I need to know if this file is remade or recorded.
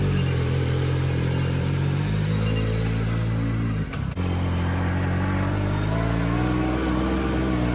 recorded